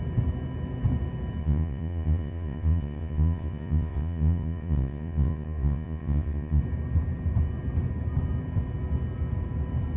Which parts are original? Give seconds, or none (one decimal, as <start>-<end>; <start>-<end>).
0.0-1.4; 6.6-10.0